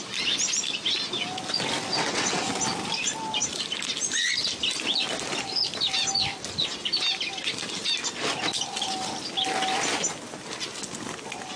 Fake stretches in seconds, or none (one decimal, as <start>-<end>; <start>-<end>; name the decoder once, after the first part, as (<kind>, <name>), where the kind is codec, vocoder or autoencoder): 1.9-2.5 (vocoder, WaveNeXt)